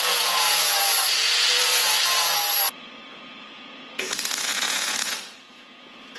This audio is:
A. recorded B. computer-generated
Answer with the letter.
B